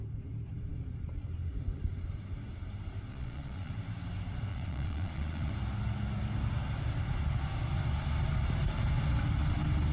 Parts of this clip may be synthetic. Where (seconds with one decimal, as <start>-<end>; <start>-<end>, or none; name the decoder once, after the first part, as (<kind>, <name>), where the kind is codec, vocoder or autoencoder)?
3.1-3.7 (vocoder, Vocos); 4.5-5.5